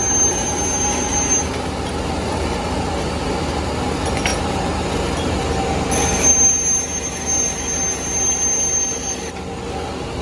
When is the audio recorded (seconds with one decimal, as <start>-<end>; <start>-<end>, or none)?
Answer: 0.0-10.2